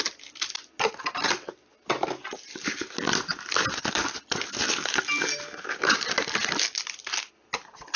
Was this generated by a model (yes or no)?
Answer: no